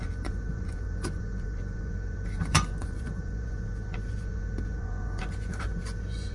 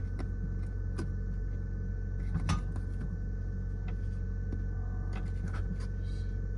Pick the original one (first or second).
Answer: second